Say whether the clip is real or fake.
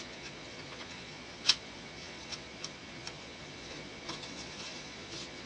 fake